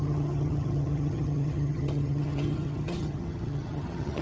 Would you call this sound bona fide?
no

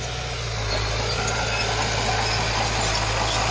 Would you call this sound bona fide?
yes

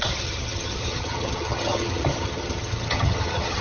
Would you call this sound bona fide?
no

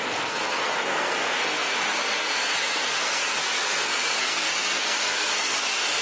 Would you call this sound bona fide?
no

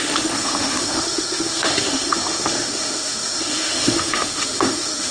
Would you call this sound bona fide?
no